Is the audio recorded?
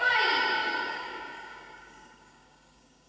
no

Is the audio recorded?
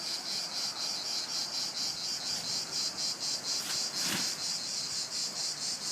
yes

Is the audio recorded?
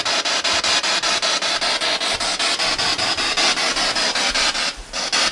yes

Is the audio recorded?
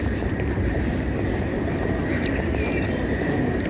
no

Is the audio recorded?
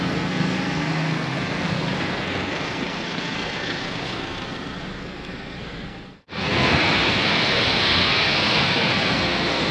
no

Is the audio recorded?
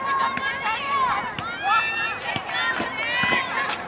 yes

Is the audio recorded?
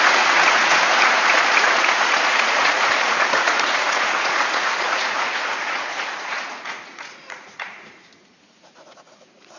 no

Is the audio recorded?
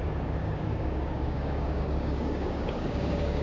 no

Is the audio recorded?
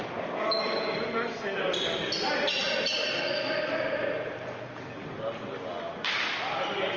yes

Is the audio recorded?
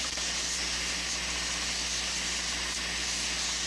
yes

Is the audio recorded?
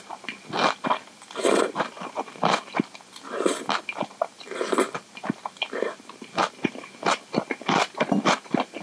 yes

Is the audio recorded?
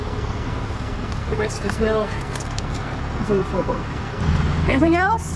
no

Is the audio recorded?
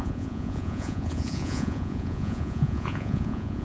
no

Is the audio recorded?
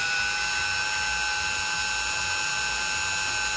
yes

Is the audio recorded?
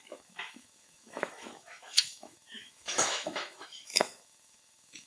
no